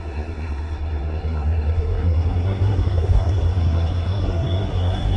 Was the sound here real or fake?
fake